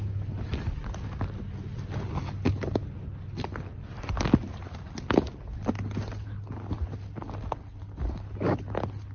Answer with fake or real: real